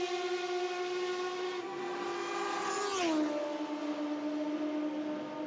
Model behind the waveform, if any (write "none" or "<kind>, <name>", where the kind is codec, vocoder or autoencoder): none